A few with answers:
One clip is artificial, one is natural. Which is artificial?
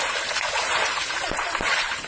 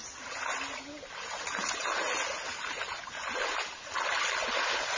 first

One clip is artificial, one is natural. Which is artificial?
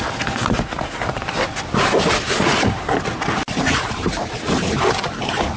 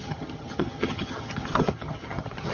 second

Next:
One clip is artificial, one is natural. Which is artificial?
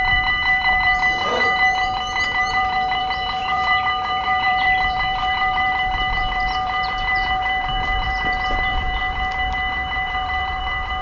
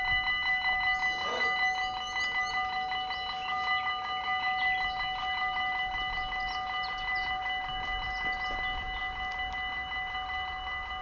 first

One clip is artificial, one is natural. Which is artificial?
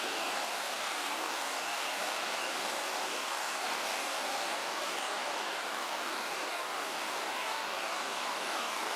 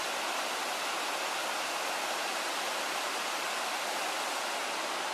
first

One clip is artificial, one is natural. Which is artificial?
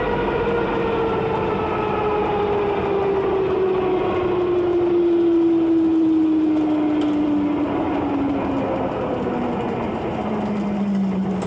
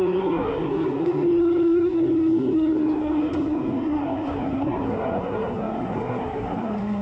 second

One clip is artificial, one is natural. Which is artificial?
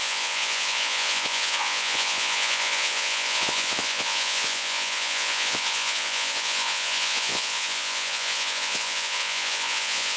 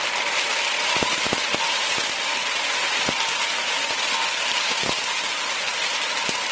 first